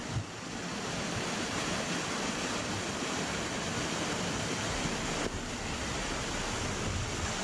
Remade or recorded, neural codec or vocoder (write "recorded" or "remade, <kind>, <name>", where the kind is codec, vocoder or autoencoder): recorded